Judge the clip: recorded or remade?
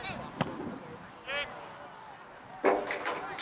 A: recorded